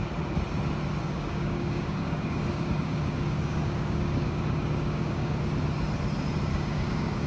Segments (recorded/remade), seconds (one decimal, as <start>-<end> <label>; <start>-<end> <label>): 0.0-1.0 recorded; 1.0-5.4 remade; 5.4-6.5 recorded; 6.5-7.3 remade